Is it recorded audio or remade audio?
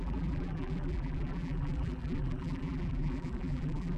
remade